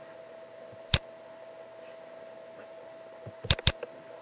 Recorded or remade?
recorded